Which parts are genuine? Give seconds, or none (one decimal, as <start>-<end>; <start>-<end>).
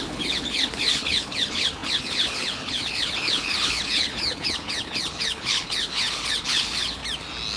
7.0-7.6